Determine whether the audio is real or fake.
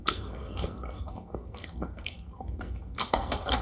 fake